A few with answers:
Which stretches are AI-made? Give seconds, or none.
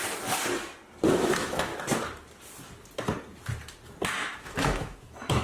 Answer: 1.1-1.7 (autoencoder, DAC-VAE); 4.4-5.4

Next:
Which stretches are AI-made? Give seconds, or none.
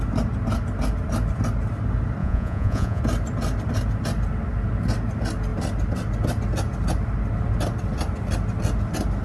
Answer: 2.2-3.0 (vocoder, Vocos)